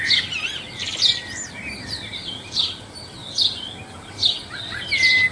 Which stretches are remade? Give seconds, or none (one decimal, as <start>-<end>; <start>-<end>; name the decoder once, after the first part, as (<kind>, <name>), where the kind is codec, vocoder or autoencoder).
0.0-0.8 (vocoder, BigVGAN v2); 1.7-3.2; 4.6-5.3